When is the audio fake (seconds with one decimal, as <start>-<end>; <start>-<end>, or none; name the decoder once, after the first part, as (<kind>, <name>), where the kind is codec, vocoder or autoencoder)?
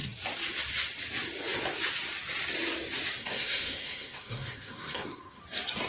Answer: 3.2-5.4 (codec, SNAC)